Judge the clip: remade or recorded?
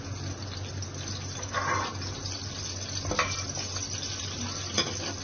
recorded